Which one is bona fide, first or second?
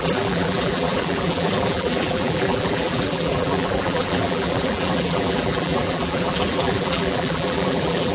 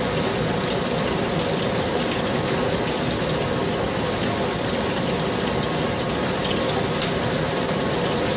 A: second